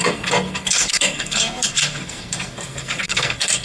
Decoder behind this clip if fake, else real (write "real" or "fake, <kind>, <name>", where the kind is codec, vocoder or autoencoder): fake, codec, SNAC